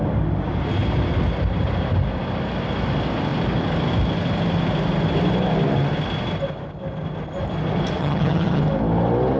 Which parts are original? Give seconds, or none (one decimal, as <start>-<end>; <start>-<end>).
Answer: 0.0-8.0; 8.6-9.4